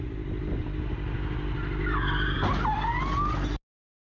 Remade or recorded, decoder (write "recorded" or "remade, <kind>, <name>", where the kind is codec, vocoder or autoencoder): recorded